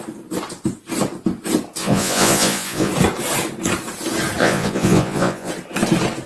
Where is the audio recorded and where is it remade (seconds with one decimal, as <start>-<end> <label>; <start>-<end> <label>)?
0.0-1.8 recorded; 1.8-2.9 remade; 2.9-4.4 recorded; 4.4-5.5 remade; 5.5-6.3 recorded